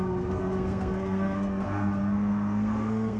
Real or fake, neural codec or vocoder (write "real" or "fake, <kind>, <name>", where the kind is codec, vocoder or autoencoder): fake, codec, SNAC